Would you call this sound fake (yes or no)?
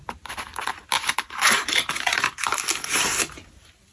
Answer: no